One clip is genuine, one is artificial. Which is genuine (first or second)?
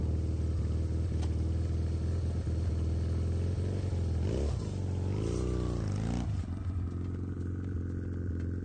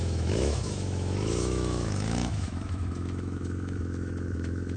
first